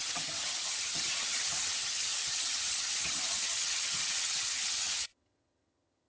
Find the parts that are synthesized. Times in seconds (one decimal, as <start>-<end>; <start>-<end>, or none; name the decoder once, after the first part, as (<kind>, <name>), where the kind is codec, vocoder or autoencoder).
0.0-6.1 (vocoder, HiFi-GAN)

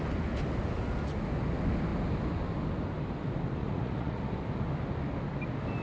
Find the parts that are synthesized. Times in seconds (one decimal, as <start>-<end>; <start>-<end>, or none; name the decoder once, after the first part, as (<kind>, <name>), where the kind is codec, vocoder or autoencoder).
3.6-4.2 (vocoder, Vocos)

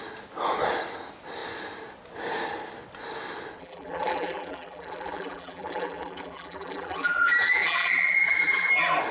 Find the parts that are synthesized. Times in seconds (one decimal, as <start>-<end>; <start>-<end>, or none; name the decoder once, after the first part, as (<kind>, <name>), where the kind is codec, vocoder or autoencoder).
3.6-8.7 (vocoder, BigVGAN v2)

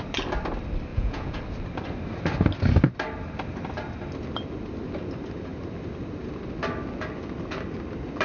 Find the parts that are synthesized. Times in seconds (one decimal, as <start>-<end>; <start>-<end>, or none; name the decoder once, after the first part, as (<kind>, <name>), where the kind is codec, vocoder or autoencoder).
0.9-1.4 (vocoder, Vocos)

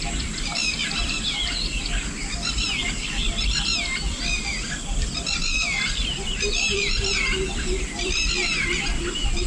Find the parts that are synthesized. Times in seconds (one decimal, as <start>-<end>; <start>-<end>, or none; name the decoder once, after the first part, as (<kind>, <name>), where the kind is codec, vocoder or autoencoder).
0.0-9.5 (vocoder, BigVGAN v2)

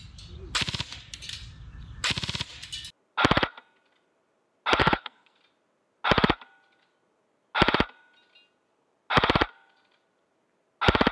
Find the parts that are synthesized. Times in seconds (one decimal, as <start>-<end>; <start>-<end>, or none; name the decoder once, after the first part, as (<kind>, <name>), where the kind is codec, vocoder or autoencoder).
4.8-5.4 (codec, SNAC)

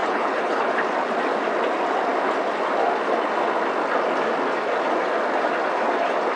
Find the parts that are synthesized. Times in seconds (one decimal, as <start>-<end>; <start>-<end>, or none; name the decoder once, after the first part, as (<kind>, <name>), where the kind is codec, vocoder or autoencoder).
0.0-0.7 (codec, HILCodec)

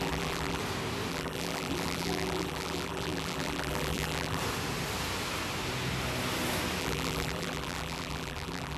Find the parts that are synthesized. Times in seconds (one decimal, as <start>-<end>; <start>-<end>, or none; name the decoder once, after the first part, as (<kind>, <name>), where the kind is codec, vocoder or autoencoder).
0.0-0.6 (vocoder, BigVGAN v2); 1.1-4.4; 6.8-8.8